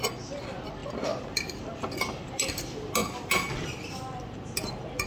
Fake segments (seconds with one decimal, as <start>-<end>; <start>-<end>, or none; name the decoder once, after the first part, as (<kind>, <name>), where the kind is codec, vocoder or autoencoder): none